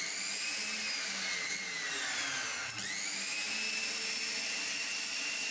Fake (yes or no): no